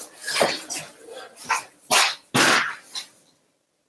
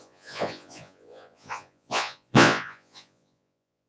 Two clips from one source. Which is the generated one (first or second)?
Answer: second